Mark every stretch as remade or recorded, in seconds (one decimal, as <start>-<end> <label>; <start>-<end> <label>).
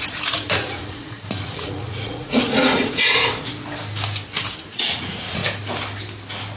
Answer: 0.0-3.5 remade; 3.5-4.6 recorded; 4.6-5.4 remade; 5.4-6.6 recorded